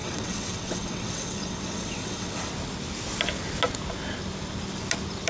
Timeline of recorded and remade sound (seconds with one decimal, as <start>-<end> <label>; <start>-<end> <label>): 0.0-2.5 remade; 2.5-5.3 recorded